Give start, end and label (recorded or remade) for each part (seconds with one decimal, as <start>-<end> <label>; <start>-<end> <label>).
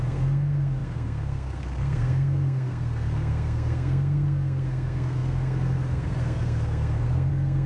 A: 0.0-7.7 remade